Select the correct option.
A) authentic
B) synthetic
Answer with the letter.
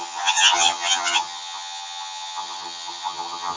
B